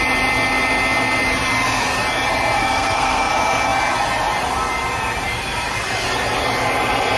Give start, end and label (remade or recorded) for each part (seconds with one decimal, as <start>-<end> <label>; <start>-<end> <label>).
0.0-2.6 recorded; 2.6-3.3 remade; 3.3-7.2 recorded

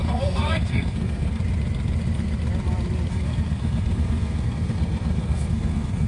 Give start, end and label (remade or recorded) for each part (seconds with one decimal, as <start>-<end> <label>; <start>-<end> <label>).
0.0-1.4 remade; 1.4-3.1 recorded; 3.1-6.1 remade